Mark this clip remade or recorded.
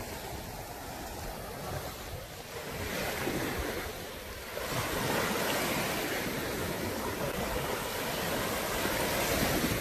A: recorded